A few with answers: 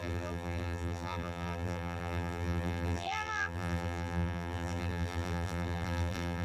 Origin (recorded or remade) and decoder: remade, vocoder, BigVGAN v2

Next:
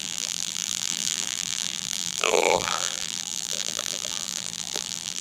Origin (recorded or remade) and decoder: remade, vocoder, BigVGAN v2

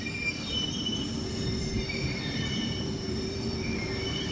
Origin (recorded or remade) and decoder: remade, vocoder, BigVGAN v2